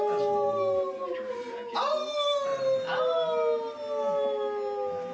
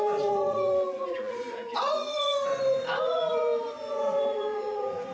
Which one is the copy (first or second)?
second